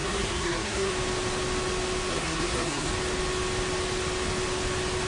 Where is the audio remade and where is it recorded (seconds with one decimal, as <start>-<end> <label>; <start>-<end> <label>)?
0.0-0.9 remade; 0.9-2.1 recorded; 2.1-2.9 remade; 2.9-5.1 recorded

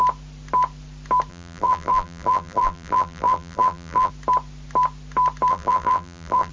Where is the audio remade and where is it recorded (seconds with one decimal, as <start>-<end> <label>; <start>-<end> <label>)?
0.0-1.3 recorded; 1.3-4.1 remade; 4.1-5.5 recorded; 5.5-6.5 remade